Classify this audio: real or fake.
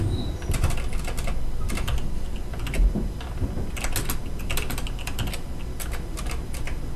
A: real